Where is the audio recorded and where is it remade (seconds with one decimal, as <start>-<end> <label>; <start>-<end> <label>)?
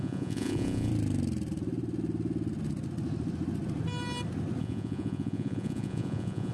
0.0-0.9 remade; 0.9-4.6 recorded; 4.6-6.5 remade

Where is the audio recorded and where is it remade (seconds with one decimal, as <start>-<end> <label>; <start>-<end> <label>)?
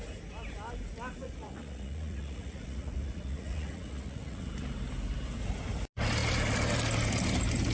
0.0-1.2 recorded; 1.2-4.5 remade; 4.5-7.7 recorded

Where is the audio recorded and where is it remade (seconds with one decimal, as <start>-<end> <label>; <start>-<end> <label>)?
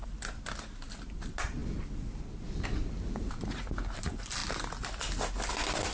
0.0-5.9 recorded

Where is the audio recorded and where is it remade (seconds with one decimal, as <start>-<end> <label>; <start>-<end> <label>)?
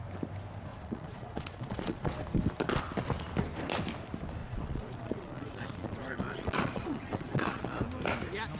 0.0-0.7 recorded; 0.7-2.1 remade; 2.1-4.4 recorded; 4.4-7.8 remade; 7.8-8.6 recorded